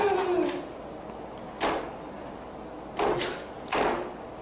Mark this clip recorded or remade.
recorded